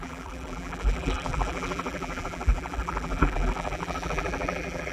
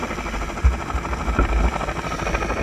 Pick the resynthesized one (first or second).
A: first